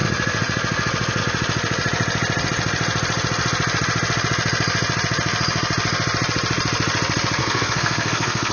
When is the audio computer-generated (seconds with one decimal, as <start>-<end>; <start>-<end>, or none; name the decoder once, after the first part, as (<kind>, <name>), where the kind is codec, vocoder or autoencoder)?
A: 7.4-8.5 (codec, SNAC)